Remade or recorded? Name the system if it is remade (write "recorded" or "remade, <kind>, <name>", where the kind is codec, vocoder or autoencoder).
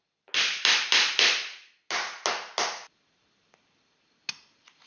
recorded